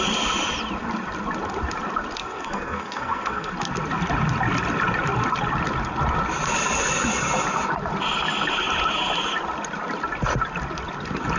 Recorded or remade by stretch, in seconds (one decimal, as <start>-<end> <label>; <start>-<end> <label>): 0.0-2.2 recorded; 2.2-3.5 remade; 3.5-11.4 recorded